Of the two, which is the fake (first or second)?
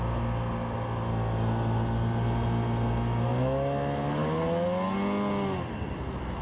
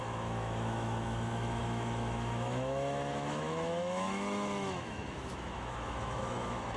second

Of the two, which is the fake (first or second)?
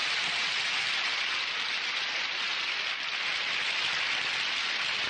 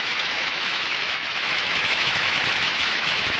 second